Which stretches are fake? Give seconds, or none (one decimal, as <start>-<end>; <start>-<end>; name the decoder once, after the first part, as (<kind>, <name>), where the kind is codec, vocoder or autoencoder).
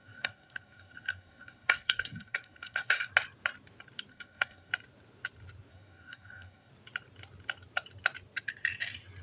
0.0-3.1 (codec, SNAC); 4.1-4.7; 5.7-6.7